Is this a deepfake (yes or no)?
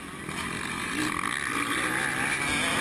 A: no